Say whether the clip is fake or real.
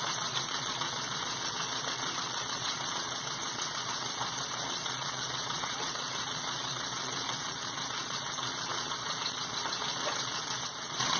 fake